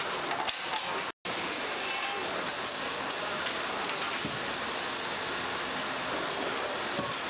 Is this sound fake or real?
real